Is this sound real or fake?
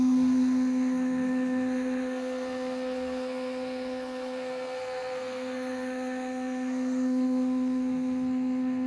fake